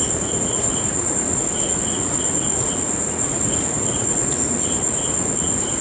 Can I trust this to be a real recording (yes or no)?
no